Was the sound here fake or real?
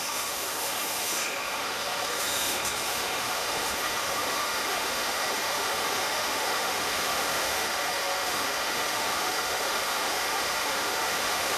fake